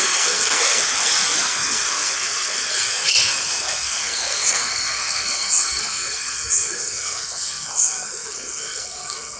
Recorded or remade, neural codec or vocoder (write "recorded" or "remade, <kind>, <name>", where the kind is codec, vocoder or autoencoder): remade, codec, SNAC